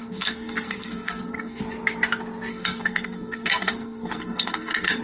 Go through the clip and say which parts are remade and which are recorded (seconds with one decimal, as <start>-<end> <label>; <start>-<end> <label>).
0.0-1.6 remade; 1.6-2.5 recorded; 2.5-5.0 remade